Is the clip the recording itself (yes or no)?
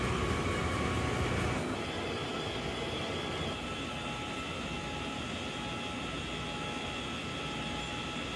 yes